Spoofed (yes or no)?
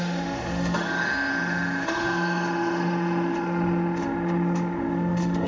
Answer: yes